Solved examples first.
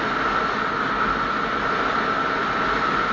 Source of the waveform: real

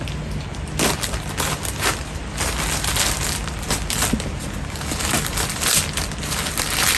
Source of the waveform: real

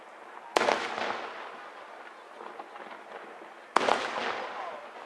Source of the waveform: real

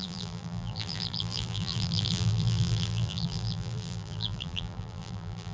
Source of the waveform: fake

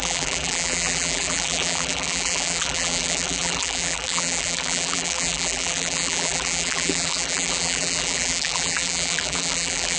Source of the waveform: fake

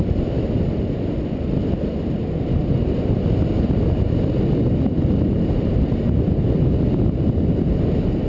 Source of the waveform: real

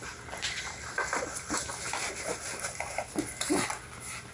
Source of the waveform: real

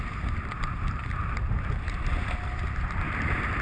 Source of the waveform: real